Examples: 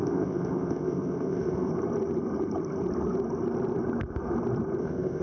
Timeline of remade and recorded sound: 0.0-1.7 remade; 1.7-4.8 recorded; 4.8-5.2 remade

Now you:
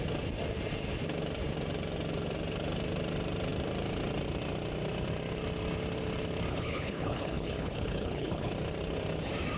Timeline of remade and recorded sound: 0.0-6.5 recorded; 6.5-8.5 remade; 8.5-9.6 recorded

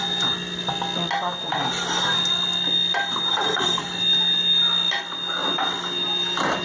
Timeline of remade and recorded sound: 0.0-3.3 recorded; 3.3-3.8 remade; 3.8-6.6 recorded

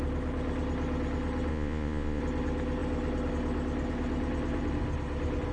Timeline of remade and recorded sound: 0.0-1.5 recorded; 1.5-2.2 remade; 2.2-5.5 recorded

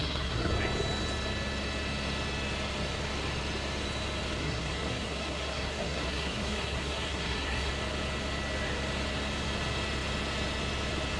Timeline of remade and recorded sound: 0.0-0.5 remade; 0.5-4.4 recorded; 4.4-7.7 remade; 7.7-11.2 recorded

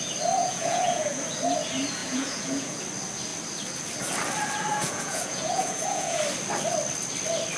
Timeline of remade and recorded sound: 0.0-0.4 recorded; 0.4-1.2 remade; 1.2-2.0 recorded; 2.0-2.8 remade; 2.8-4.7 recorded; 4.7-6.2 remade; 6.2-7.6 recorded

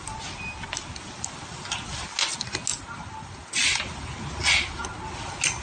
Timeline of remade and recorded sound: 0.0-5.6 recorded